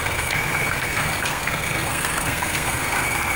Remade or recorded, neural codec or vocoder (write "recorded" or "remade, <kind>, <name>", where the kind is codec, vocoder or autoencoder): remade, codec, SNAC